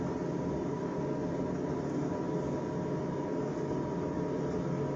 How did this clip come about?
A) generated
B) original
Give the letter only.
B